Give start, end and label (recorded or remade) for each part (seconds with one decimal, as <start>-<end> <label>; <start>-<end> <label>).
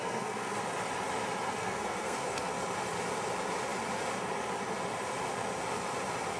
0.0-0.6 remade; 0.6-1.6 recorded; 1.6-2.6 remade; 2.6-6.4 recorded